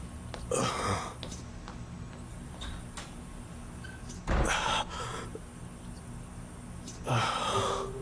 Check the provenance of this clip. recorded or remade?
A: recorded